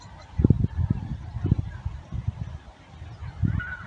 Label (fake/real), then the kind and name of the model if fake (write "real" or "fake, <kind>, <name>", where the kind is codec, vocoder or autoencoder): real